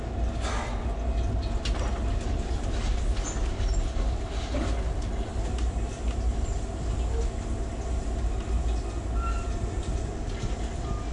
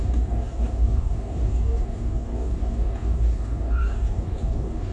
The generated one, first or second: second